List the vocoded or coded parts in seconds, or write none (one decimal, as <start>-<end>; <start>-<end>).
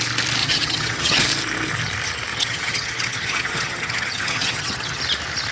0.4-1.2; 2.3-5.0